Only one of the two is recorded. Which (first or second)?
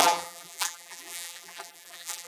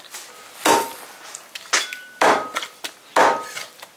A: second